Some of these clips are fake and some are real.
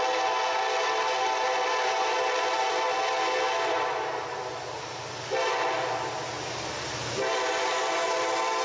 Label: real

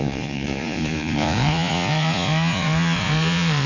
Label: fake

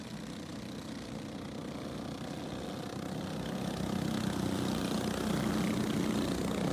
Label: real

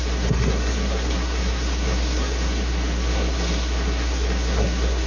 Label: fake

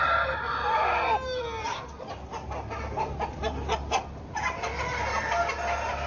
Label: real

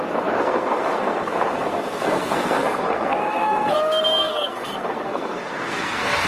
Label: fake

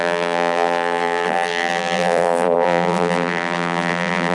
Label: fake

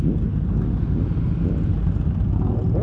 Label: real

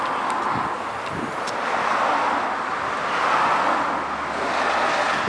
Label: real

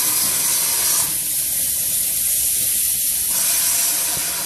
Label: real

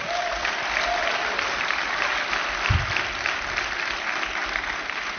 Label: real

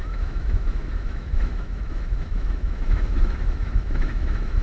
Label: fake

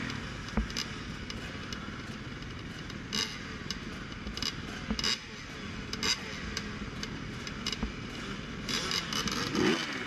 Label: real